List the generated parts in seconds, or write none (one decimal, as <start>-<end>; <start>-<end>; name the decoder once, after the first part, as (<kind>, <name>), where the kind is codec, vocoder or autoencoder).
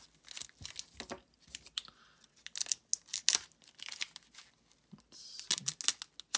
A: none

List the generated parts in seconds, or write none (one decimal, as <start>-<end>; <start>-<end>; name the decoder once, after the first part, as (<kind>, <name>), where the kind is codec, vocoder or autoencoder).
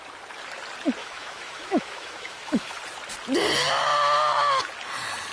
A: 1.0-2.8 (autoencoder, DAC-VAE)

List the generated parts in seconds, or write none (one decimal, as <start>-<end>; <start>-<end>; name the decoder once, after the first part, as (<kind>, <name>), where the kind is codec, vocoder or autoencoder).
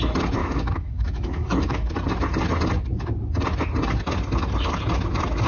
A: 0.4-1.9 (autoencoder, DAC-VAE)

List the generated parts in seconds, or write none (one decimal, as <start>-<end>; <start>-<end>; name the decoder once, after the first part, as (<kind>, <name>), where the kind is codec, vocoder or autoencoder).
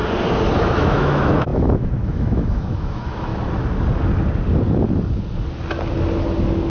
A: 0.6-3.3 (autoencoder, DAC-VAE)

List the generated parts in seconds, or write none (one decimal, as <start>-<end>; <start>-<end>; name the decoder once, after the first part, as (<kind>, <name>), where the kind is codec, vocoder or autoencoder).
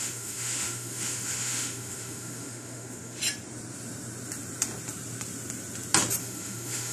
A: 0.0-3.2 (autoencoder, DAC-VAE); 6.2-6.9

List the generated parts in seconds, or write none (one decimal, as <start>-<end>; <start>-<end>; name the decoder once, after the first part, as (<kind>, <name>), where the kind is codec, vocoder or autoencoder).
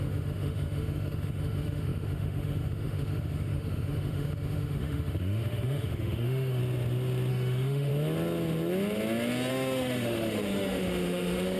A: 0.0-6.6 (autoencoder, DAC-VAE); 7.3-7.9; 9.5-11.6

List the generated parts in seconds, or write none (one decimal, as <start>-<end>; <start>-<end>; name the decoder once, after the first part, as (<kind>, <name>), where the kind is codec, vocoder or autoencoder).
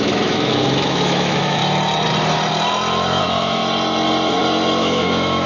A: 0.0-1.6 (autoencoder, DAC-VAE); 3.2-3.6; 4.8-5.5